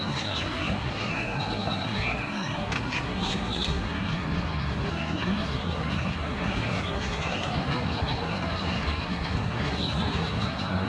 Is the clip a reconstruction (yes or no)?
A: yes